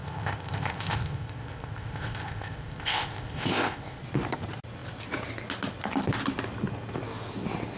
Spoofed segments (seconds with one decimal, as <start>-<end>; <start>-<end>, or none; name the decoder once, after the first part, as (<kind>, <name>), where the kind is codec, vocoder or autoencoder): 0.0-4.0 (codec, ZipCodec)